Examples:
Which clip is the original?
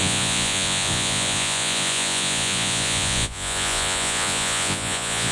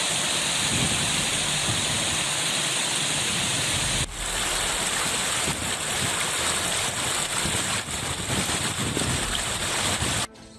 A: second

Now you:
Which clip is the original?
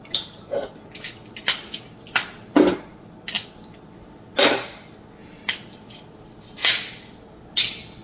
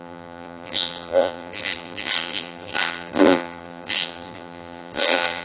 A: first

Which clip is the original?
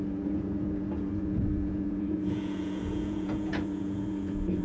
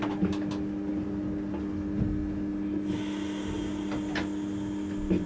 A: second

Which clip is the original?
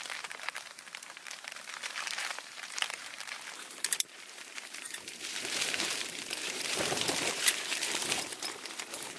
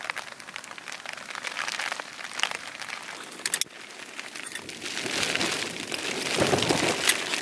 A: second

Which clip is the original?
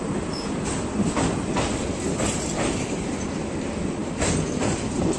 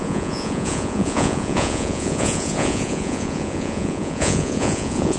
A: first